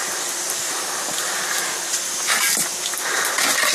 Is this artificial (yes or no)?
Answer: no